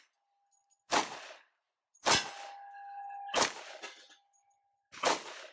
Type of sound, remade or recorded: recorded